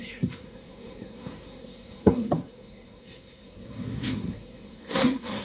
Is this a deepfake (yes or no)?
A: yes